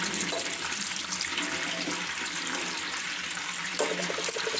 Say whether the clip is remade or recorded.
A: remade